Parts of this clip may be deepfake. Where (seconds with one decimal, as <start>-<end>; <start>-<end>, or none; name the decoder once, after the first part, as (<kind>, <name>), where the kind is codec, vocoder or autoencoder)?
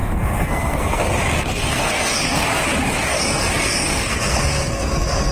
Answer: 0.0-1.1 (codec, SNAC); 1.5-2.5; 3.1-5.3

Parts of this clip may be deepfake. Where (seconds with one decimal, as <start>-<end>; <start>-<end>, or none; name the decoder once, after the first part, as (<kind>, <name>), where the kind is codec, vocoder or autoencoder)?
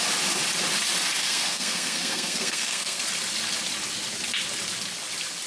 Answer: 1.2-3.0 (codec, SNAC)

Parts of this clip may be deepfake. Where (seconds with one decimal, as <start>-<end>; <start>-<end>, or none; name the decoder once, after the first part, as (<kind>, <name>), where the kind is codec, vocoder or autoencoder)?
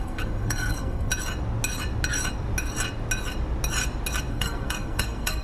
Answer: 0.0-1.1 (codec, SNAC); 4.3-5.4